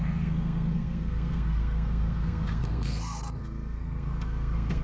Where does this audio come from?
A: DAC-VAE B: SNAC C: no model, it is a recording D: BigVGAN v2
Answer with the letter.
B